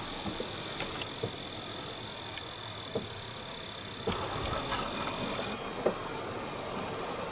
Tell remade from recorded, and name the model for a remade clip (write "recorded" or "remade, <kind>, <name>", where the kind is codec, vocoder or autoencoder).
recorded